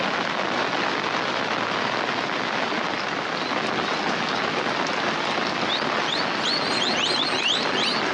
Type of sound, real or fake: real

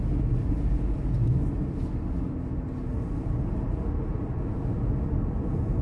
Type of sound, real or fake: real